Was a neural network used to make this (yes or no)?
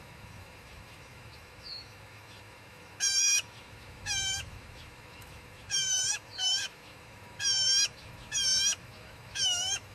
yes